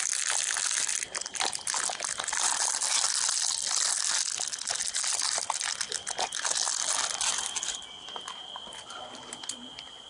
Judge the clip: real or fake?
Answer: real